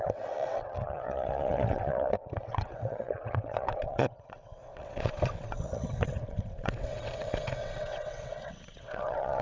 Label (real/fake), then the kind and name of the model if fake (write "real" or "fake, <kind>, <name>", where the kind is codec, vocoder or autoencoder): fake, vocoder, WaveNeXt